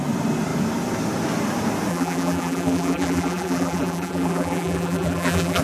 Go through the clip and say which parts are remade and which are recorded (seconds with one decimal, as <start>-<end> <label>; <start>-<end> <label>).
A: 0.0-1.9 recorded; 1.9-5.6 remade